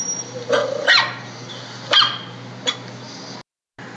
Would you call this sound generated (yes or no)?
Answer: no